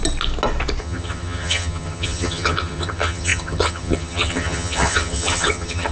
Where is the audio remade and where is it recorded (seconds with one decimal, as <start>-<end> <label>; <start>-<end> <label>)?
0.0-0.8 recorded; 0.8-5.9 remade